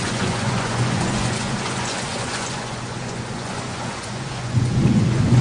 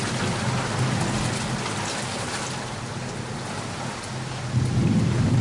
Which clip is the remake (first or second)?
first